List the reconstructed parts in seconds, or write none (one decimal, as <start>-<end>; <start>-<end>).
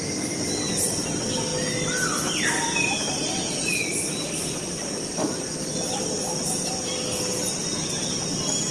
none